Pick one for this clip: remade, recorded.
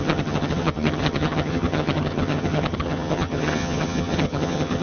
remade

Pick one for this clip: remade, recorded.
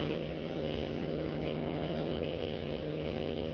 remade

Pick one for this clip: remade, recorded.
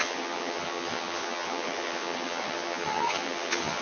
remade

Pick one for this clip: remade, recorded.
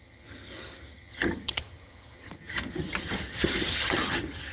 remade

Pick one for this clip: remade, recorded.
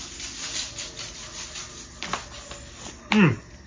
recorded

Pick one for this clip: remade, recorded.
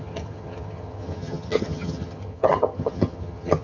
remade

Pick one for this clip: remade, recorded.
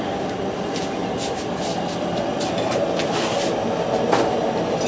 recorded